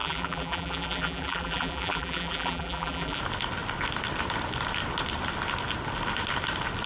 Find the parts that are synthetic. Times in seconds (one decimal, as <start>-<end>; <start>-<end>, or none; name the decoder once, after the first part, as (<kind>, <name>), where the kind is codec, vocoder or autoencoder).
0.0-3.2 (vocoder, BigVGAN v2)